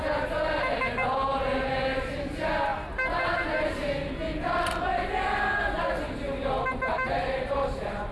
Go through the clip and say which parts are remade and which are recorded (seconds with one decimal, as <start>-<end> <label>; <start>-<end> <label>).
0.0-8.1 recorded